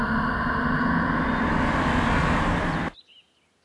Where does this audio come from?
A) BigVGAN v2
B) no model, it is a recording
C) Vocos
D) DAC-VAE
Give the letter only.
B